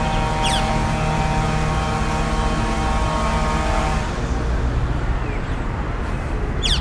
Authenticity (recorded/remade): recorded